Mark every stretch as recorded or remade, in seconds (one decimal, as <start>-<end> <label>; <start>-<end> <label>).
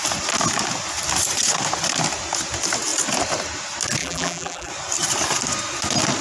0.0-4.0 recorded; 4.0-4.7 remade; 4.7-6.2 recorded